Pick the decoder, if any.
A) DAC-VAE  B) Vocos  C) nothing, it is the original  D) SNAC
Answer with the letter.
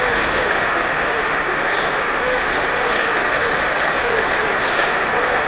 A